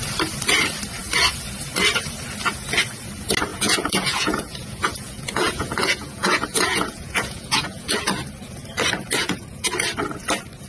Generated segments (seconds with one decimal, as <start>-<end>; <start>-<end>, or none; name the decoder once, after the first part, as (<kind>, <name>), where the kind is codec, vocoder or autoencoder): 3.5-8.0 (vocoder, Vocos); 9.2-9.7